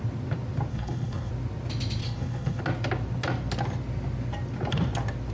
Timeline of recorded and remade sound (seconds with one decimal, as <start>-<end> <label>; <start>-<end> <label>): 0.0-0.7 recorded; 0.7-1.3 remade; 1.3-2.0 recorded; 2.0-2.6 remade; 2.6-5.3 recorded